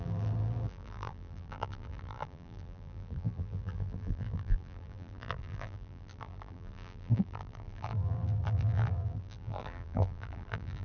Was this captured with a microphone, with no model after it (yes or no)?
no